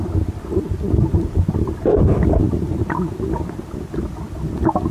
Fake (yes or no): no